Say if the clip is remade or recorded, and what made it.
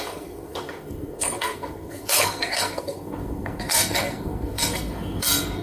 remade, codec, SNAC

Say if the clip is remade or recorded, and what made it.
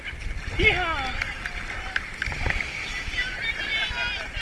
recorded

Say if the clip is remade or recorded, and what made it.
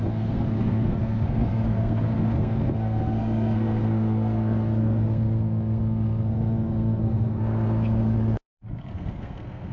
remade, codec, SNAC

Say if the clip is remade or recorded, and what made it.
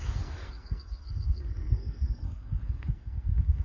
remade, codec, SNAC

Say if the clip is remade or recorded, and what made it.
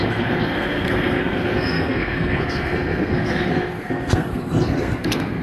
remade, codec, SNAC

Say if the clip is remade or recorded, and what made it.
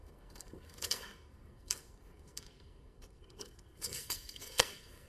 remade, codec, SNAC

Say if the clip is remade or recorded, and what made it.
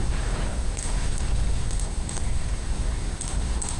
remade, codec, SNAC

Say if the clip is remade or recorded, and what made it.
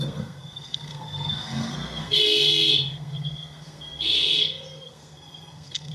remade, codec, SNAC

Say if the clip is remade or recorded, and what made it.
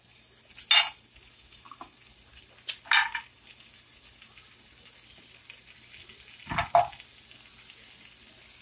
recorded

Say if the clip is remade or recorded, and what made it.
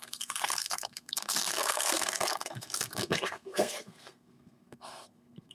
remade, codec, SNAC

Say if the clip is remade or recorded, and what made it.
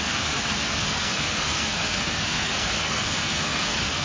remade, codec, SNAC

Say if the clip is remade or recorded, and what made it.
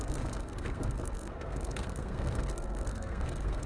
remade, codec, SNAC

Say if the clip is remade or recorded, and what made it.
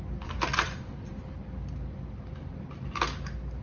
recorded